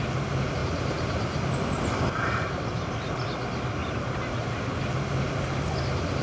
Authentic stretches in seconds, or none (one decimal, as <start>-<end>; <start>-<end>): 0.0-0.6; 1.4-3.8; 4.9-6.2